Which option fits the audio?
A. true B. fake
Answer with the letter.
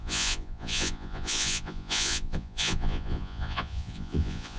B